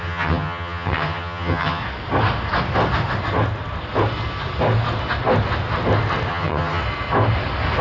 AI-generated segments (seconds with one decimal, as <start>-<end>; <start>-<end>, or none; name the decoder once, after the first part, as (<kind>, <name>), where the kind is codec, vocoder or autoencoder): 0.0-1.8 (vocoder, HiFi-GAN); 6.3-6.8